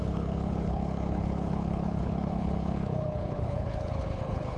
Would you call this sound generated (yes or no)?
yes